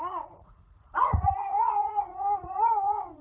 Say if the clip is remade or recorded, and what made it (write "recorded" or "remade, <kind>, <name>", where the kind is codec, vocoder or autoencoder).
remade, vocoder, Vocos